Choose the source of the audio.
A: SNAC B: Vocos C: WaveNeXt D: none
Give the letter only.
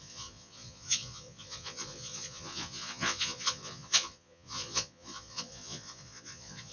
B